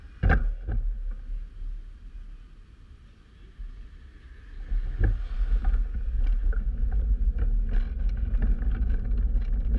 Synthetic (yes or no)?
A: no